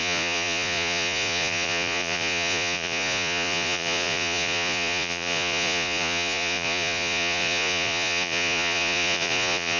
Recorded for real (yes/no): no